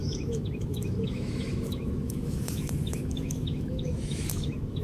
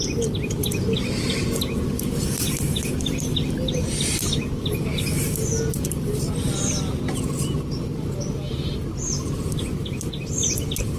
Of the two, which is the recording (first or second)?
second